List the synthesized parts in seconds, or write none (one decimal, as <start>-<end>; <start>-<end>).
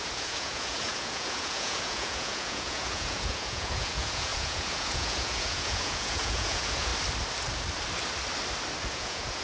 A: 0.0-6.9; 8.9-9.4